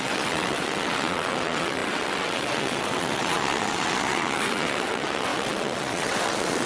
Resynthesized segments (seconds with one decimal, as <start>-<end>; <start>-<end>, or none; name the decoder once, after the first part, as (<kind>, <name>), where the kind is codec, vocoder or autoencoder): 0.0-6.7 (vocoder, WaveNeXt)